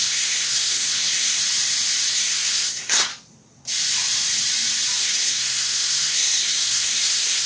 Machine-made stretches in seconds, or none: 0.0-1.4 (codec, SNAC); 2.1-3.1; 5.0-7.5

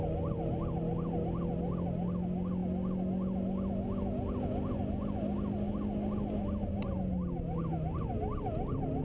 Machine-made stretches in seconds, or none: none